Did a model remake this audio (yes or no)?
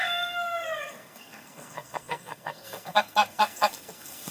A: yes